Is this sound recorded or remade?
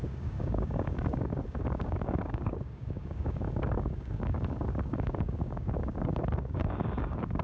remade